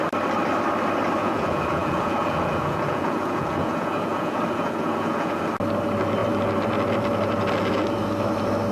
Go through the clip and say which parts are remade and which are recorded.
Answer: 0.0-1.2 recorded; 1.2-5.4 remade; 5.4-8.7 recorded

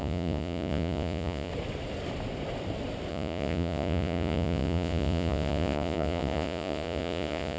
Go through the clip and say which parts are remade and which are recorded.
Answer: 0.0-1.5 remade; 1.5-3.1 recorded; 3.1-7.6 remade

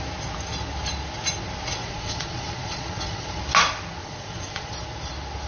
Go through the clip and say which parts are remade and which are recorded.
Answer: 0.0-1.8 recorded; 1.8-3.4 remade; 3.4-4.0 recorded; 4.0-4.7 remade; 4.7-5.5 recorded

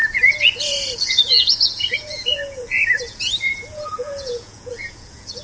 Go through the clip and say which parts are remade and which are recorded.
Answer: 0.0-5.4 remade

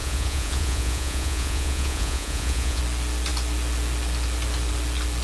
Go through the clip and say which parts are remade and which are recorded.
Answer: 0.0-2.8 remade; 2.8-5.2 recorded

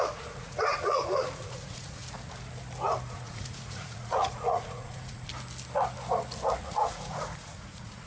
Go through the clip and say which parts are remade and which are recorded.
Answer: 0.0-2.0 remade; 2.0-3.1 recorded; 3.1-5.3 remade; 5.3-6.6 recorded; 6.6-8.1 remade

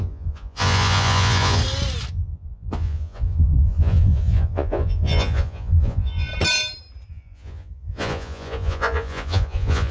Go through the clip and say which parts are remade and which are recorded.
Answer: 0.0-1.6 remade; 1.6-2.1 recorded; 2.1-6.3 remade; 6.3-7.1 recorded; 7.1-9.9 remade

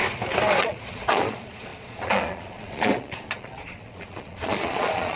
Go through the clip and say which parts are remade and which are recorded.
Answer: 0.0-0.6 recorded; 0.6-5.2 remade